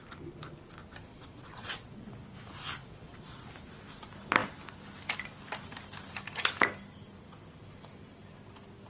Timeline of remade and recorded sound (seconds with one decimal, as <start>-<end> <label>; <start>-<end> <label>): 0.0-1.1 recorded; 1.1-2.1 remade; 2.1-2.8 recorded; 2.8-3.5 remade; 3.5-8.9 recorded